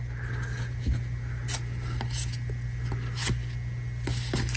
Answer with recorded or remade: recorded